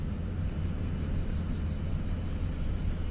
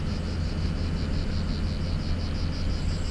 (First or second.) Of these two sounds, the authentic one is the second